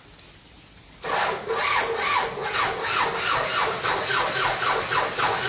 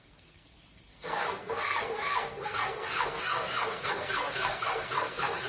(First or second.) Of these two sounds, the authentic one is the first